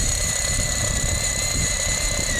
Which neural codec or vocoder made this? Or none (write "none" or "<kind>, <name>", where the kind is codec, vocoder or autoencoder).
vocoder, BigVGAN v2